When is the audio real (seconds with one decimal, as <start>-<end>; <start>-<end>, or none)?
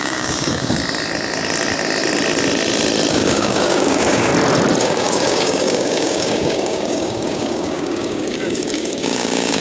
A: 0.8-3.1; 4.3-4.8